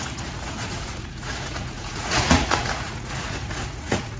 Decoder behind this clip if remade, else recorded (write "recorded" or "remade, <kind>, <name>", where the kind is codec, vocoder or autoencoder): remade, vocoder, Vocos